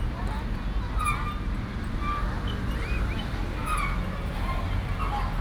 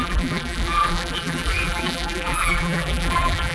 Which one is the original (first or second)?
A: first